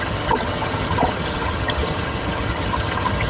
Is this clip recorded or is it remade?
remade